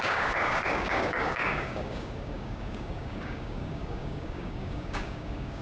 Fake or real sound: fake